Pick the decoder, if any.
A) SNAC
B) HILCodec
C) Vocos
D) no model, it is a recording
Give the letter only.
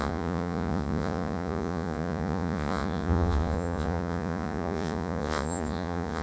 C